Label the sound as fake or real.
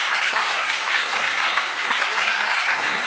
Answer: fake